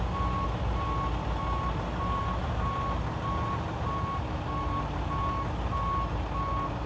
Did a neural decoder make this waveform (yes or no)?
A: no